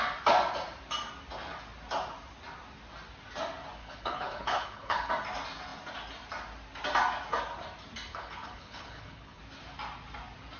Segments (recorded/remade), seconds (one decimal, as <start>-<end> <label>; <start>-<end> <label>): 0.0-3.8 recorded; 3.8-5.1 remade; 5.1-8.1 recorded; 8.1-9.4 remade; 9.4-10.6 recorded